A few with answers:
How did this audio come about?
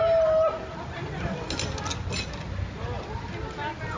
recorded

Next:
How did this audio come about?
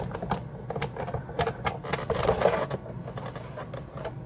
recorded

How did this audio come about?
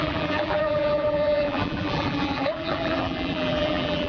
remade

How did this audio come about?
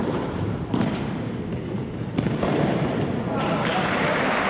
remade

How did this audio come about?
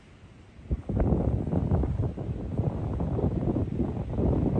recorded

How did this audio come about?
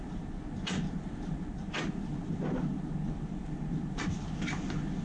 recorded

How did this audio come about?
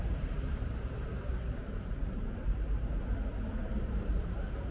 remade